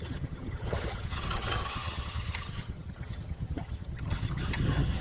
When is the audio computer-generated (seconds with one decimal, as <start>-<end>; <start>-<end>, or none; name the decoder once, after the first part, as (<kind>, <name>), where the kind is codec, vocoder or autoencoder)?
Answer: 0.0-5.0 (vocoder, HiFi-GAN)